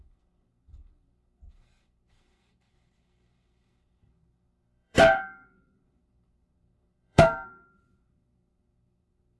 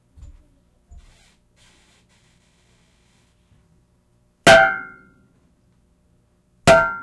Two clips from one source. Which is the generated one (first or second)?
first